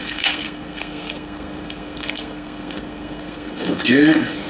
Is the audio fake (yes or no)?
yes